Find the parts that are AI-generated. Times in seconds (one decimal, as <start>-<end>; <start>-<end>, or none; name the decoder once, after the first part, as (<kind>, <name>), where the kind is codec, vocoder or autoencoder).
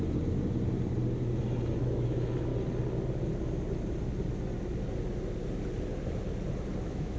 1.8-2.5 (autoencoder, DAC-VAE); 6.8-7.2